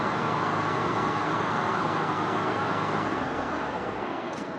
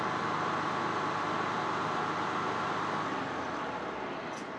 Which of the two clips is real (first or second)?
second